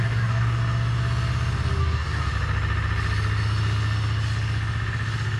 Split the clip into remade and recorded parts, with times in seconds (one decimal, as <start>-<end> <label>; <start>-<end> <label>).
0.0-0.6 remade; 0.6-1.8 recorded; 1.8-2.3 remade; 2.3-5.4 recorded